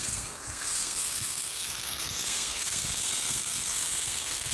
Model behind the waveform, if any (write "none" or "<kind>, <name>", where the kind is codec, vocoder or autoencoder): codec, SNAC